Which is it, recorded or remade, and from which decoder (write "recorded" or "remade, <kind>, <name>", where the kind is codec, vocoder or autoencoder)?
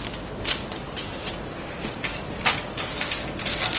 recorded